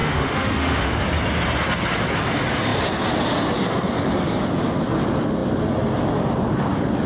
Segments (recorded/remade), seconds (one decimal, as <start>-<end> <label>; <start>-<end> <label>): 0.0-1.0 remade; 1.0-7.1 recorded